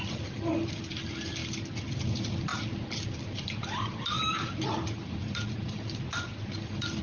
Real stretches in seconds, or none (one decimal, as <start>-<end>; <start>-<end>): 0.0-7.0